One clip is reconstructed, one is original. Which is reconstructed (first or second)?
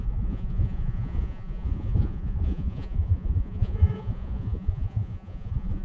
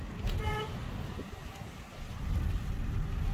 first